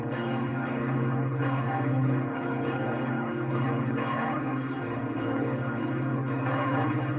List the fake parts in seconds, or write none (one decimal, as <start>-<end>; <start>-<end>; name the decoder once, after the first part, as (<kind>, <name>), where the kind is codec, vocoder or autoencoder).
0.0-7.2 (codec, HILCodec)